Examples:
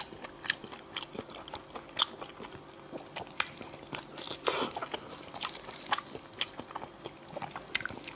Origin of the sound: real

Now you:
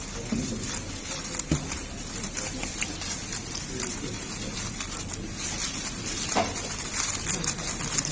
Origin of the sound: real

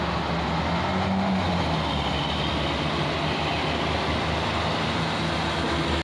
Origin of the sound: real